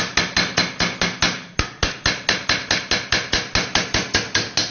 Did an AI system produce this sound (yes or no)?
no